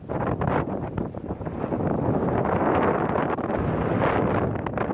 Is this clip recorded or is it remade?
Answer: recorded